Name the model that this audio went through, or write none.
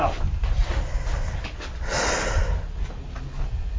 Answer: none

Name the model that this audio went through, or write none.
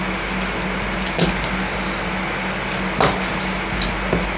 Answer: none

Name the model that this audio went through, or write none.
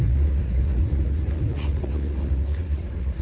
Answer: vocoder, Vocos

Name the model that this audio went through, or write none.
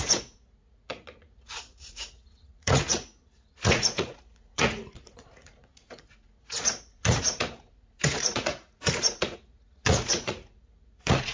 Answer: vocoder, Vocos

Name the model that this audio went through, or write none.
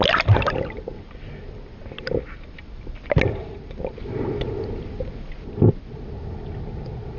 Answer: none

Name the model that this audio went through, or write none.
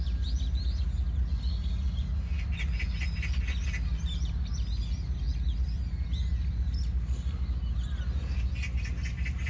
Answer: none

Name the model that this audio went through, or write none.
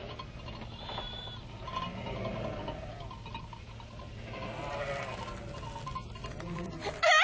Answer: none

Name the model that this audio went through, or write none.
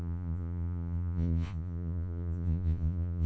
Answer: vocoder, Vocos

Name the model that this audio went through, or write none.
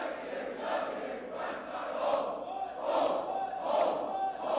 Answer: none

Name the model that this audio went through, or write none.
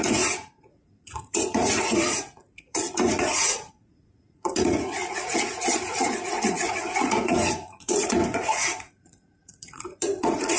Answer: vocoder, Vocos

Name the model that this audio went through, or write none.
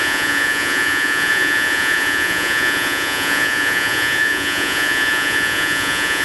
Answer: vocoder, Vocos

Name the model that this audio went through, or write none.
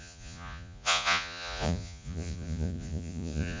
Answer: vocoder, Vocos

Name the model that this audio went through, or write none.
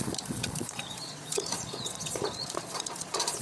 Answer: vocoder, Vocos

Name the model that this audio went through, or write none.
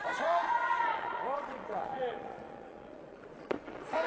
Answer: vocoder, Vocos